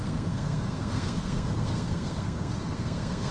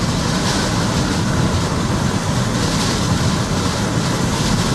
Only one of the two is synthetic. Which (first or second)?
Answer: first